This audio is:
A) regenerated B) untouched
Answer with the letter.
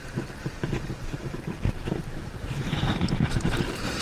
A